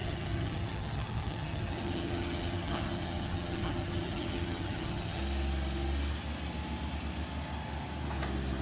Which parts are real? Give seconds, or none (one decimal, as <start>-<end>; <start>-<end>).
5.2-8.6